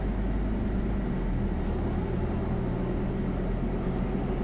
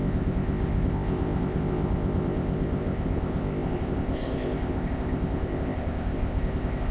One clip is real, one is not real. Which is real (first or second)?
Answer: first